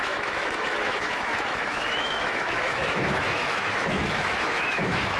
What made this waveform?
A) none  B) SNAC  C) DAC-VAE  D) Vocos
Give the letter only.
C